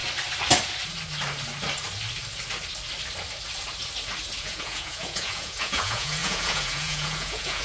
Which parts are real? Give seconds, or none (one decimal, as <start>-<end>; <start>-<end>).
0.0-4.4